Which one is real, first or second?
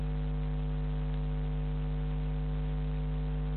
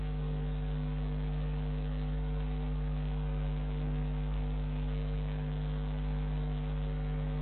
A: first